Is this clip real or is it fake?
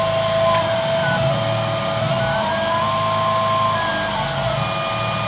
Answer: real